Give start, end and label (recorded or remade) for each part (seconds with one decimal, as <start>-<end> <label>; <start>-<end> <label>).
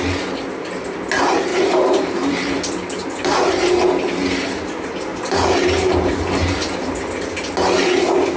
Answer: 0.0-1.5 recorded; 1.5-2.3 remade; 2.3-3.0 recorded; 3.0-3.9 remade; 3.9-5.1 recorded; 5.1-6.9 remade; 6.9-8.4 recorded